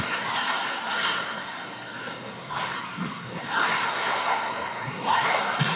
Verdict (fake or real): fake